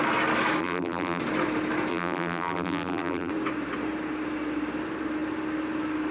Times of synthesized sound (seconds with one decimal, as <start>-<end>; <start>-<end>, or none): 0.6-1.2; 1.9-3.3